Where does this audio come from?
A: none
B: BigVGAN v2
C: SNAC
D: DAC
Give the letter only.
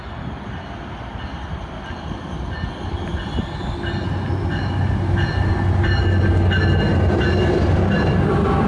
A